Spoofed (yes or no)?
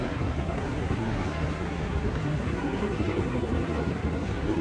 yes